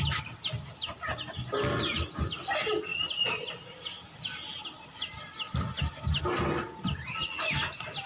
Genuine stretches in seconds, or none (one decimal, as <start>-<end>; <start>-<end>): 0.0-8.1